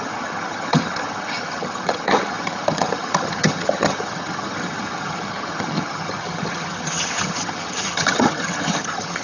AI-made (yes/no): yes